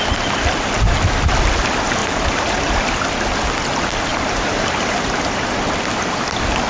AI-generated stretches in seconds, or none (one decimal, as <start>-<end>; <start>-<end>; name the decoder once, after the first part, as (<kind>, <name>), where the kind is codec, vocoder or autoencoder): 2.0-2.8 (vocoder, BigVGAN v2); 4.1-5.2